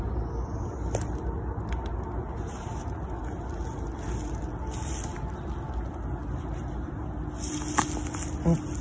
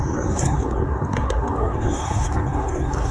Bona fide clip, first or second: first